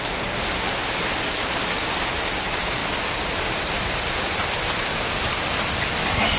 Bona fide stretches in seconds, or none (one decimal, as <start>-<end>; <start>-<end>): 2.8-3.7